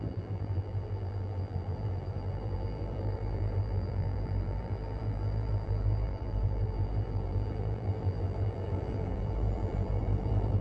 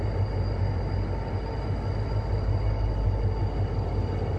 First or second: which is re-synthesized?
first